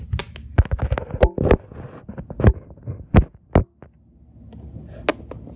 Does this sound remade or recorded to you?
recorded